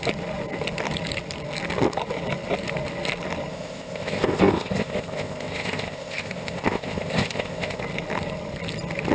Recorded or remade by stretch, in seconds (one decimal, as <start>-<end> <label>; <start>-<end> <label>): 0.0-3.5 recorded; 3.5-7.8 remade; 7.8-9.1 recorded